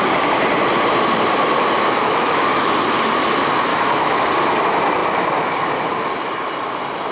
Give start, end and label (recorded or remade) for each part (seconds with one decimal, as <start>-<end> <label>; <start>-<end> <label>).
0.0-2.0 recorded; 2.0-2.7 remade; 2.7-3.7 recorded; 3.7-4.3 remade; 4.3-7.1 recorded